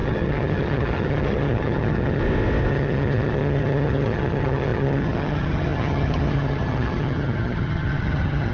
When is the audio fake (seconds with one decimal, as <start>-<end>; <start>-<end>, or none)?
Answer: 0.0-2.2; 2.7-8.5